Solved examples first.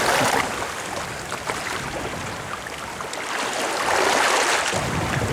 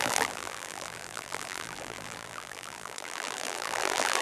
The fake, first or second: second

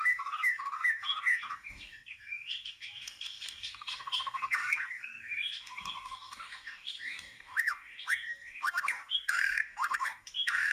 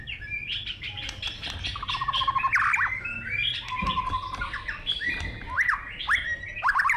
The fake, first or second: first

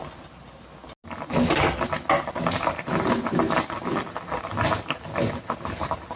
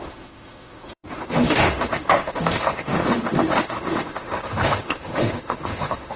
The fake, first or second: second